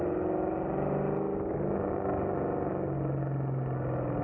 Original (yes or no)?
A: yes